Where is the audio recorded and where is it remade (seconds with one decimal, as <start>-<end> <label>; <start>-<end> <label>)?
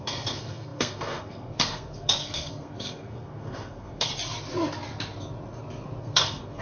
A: 0.0-4.1 remade; 4.1-6.0 recorded; 6.0-6.6 remade